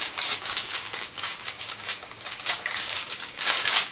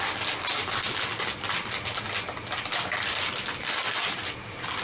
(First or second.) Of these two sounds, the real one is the second